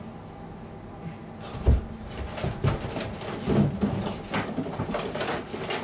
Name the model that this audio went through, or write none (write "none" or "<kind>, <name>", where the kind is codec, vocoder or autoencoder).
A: none